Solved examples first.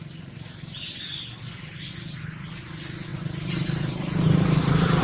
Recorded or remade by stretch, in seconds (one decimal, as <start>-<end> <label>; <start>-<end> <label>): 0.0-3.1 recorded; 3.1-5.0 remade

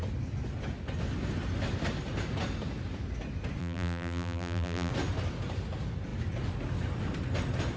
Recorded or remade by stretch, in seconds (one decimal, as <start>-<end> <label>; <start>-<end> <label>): 0.0-3.6 recorded; 3.6-4.9 remade; 4.9-7.8 recorded

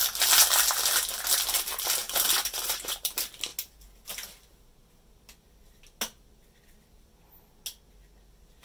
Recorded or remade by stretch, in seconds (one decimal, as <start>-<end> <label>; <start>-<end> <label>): 0.0-2.0 recorded; 2.0-3.1 remade; 3.1-8.6 recorded

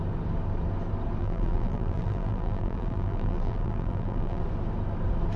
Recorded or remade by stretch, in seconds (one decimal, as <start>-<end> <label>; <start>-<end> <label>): 0.0-1.2 recorded; 1.2-4.4 remade; 4.4-5.4 recorded